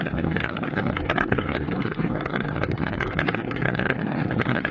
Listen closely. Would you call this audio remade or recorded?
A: remade